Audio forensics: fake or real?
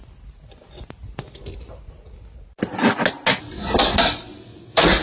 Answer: real